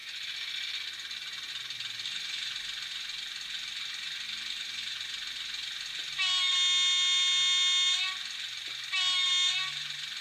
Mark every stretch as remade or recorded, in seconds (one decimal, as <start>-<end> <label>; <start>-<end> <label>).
0.0-10.2 recorded